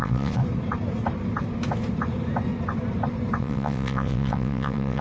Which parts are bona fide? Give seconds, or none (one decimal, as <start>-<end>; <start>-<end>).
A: 0.4-3.4